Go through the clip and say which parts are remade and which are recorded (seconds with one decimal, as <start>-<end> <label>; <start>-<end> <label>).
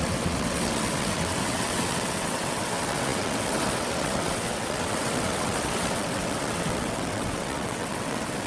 0.0-8.5 remade